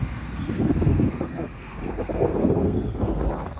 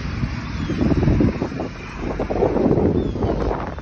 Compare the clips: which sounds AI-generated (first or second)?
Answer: first